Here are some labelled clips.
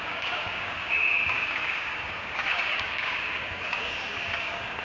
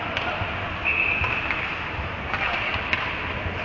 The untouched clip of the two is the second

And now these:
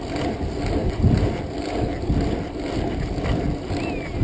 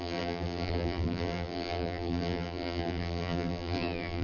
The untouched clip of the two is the first